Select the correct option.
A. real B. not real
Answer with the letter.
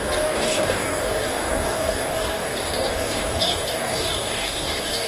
B